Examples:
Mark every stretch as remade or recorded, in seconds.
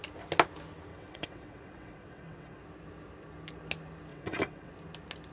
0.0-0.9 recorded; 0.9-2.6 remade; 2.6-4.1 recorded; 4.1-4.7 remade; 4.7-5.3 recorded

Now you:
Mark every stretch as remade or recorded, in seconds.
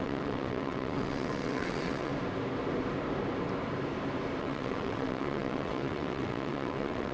0.0-2.1 remade; 2.1-4.4 recorded; 4.4-7.1 remade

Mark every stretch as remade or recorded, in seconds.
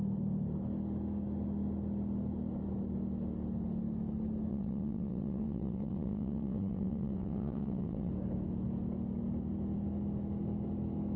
0.0-4.5 recorded; 4.5-8.1 remade; 8.1-11.2 recorded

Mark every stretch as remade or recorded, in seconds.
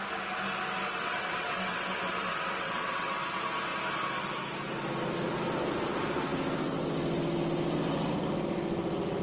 0.0-1.0 recorded; 1.0-3.2 remade; 3.2-9.2 recorded